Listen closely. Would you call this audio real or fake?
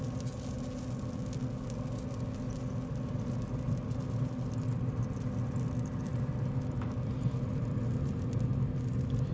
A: real